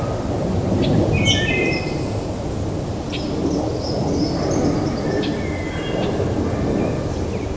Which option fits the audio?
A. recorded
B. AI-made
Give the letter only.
A